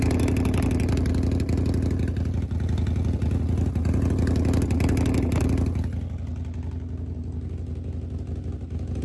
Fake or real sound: real